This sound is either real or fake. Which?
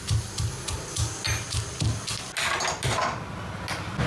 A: real